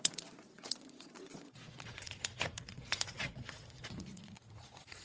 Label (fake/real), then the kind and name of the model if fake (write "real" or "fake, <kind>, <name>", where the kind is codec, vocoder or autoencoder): fake, vocoder, Vocos